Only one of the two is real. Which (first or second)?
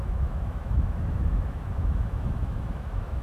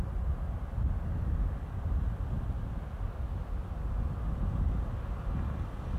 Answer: second